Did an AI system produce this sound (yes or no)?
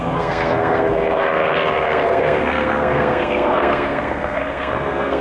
yes